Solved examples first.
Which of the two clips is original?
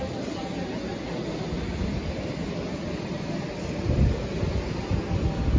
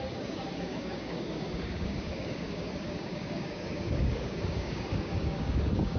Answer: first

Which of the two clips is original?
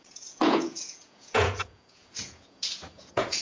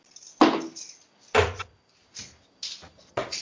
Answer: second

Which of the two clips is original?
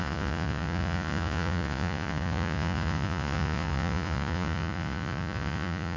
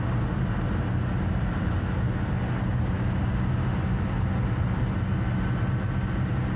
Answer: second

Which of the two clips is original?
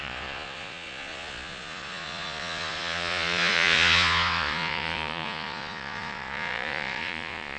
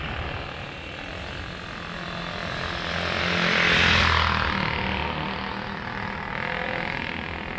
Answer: second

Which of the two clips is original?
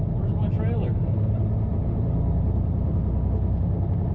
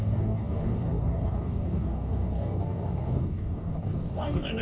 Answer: first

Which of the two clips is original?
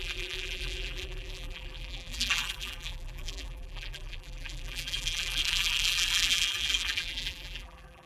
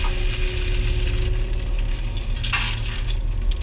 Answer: second